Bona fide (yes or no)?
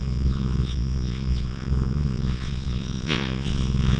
no